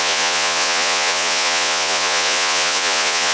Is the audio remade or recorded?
remade